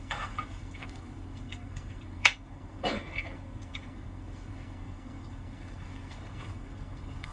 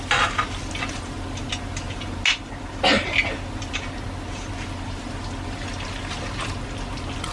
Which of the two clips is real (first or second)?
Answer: second